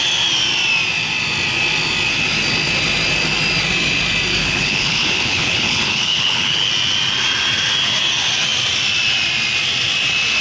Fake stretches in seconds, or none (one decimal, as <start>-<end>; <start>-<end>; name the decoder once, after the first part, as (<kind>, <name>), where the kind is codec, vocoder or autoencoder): 4.4-6.7 (codec, HILCodec)